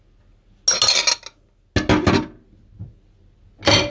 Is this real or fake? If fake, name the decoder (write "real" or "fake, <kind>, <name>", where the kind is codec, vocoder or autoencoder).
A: real